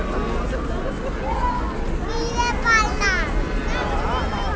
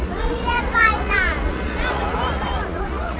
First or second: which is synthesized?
second